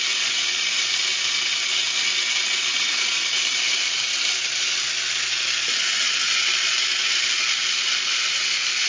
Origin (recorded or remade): recorded